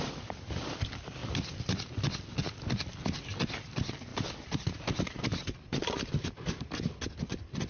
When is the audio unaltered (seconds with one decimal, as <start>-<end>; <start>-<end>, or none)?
0.0-4.1; 6.3-7.7